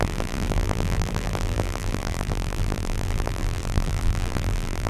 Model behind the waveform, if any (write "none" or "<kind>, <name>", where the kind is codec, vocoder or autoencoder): vocoder, BigVGAN v2